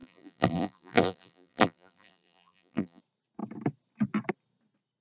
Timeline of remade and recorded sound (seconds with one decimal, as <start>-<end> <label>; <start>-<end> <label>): 0.0-3.0 remade; 3.0-5.0 recorded